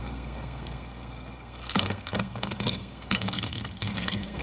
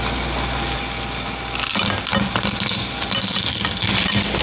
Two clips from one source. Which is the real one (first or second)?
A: second